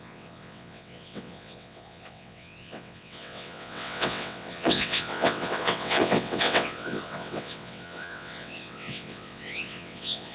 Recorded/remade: remade